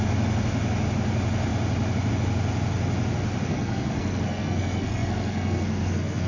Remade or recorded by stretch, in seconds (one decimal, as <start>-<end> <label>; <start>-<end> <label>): 0.0-3.5 recorded; 3.5-6.3 remade